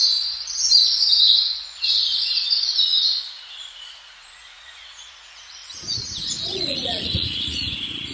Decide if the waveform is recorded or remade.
remade